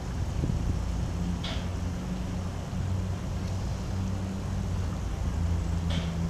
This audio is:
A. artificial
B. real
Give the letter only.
B